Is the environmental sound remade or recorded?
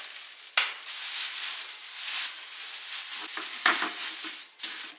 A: recorded